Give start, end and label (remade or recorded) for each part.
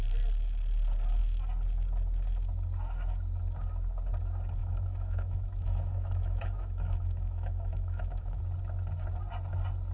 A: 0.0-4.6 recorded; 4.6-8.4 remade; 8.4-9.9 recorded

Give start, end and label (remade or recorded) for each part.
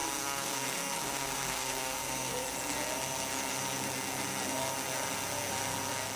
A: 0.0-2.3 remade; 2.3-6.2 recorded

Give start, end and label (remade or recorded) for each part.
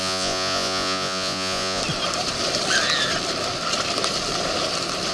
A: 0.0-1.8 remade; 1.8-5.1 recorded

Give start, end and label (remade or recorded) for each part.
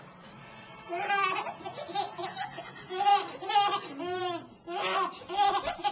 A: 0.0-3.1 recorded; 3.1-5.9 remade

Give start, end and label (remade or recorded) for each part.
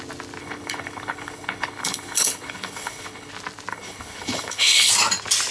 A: 0.0-0.4 recorded; 0.4-3.3 remade; 3.3-3.7 recorded; 3.7-4.9 remade; 4.9-5.5 recorded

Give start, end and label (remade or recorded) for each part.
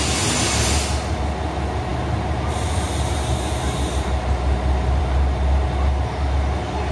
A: 0.0-6.9 recorded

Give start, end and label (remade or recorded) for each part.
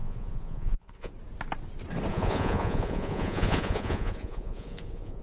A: 0.0-1.1 remade; 1.1-2.1 recorded; 2.1-5.2 remade